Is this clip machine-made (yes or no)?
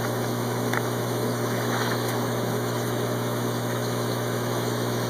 yes